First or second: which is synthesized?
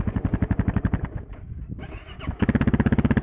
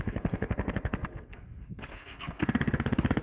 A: second